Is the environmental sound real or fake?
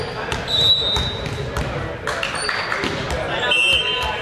real